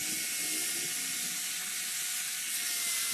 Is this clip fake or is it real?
real